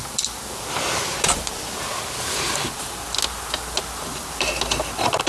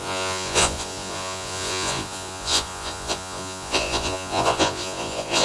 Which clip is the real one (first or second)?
first